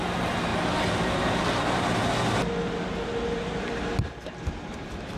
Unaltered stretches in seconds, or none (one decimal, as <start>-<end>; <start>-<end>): 0.0-5.2